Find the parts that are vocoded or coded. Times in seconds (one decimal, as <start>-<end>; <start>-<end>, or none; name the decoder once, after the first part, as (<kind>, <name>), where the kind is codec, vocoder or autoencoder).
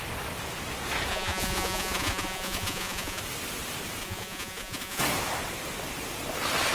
1.1-3.2 (vocoder, Vocos); 4.0-5.0